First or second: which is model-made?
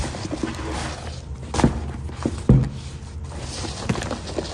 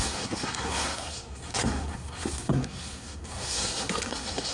second